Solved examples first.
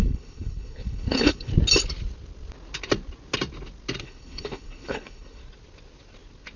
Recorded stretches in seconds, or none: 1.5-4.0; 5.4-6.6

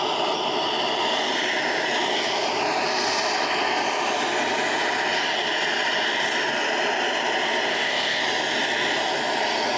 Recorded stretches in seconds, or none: 0.0-7.7; 8.2-9.8